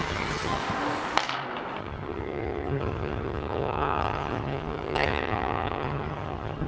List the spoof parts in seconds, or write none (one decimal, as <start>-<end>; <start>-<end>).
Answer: 0.0-0.6; 1.8-6.7